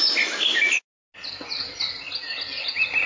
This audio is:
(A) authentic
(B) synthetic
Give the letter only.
A